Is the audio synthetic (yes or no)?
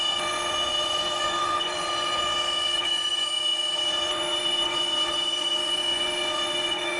yes